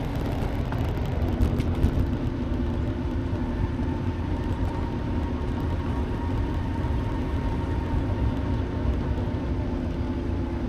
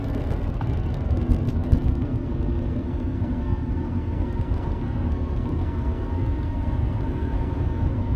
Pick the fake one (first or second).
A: second